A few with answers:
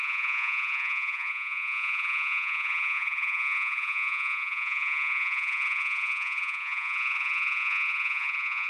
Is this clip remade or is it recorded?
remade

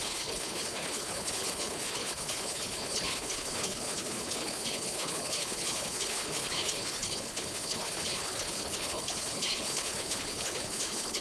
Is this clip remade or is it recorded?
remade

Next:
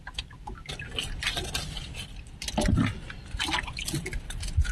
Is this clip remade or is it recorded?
recorded